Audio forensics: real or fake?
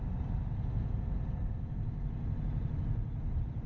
real